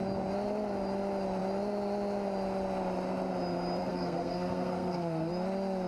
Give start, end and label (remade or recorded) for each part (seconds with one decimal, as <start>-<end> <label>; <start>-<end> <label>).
0.0-3.8 recorded; 3.8-5.3 remade; 5.3-5.9 recorded